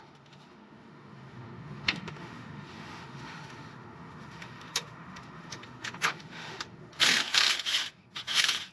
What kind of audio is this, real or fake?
fake